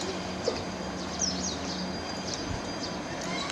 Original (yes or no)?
yes